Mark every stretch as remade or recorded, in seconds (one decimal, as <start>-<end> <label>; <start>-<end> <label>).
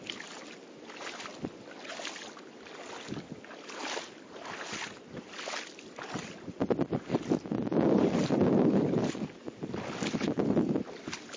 0.0-11.4 recorded